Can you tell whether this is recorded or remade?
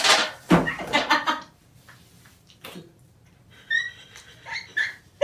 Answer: remade